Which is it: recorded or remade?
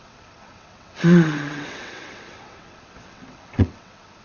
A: remade